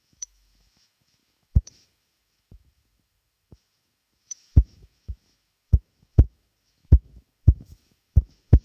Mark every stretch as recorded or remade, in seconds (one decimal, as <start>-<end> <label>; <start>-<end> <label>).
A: 0.0-8.6 remade